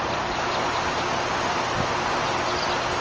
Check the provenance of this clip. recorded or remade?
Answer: recorded